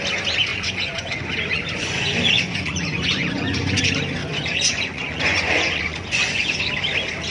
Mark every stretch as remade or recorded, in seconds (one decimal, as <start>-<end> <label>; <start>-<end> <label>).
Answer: 0.0-0.5 recorded; 0.5-3.8 remade; 3.8-4.2 recorded; 4.2-6.6 remade; 6.6-7.3 recorded